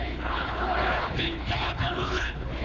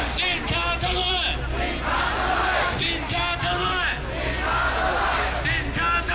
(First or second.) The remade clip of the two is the first